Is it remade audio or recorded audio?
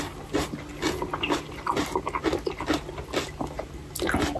recorded